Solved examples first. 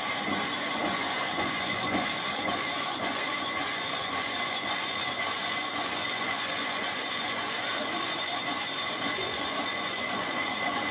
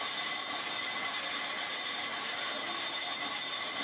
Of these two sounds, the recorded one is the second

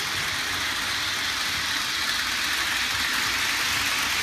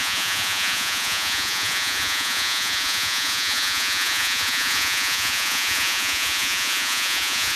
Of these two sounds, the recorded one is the first